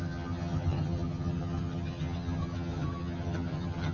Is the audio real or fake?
fake